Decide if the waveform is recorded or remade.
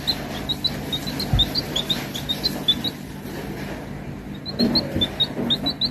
recorded